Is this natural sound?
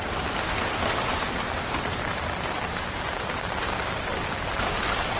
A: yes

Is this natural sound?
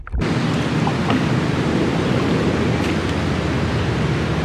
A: yes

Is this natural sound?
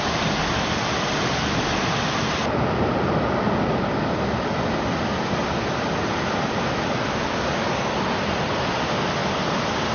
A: yes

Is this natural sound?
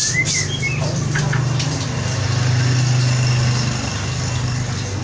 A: yes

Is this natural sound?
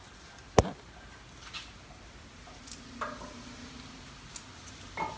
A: yes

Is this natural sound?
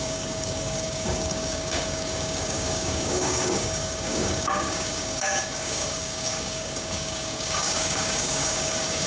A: no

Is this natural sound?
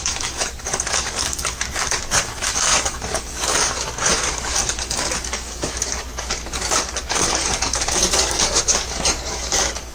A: no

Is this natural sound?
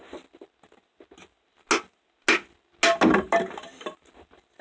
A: yes